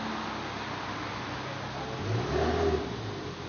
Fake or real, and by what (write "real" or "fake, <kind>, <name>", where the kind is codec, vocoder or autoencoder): real